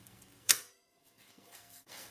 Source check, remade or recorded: remade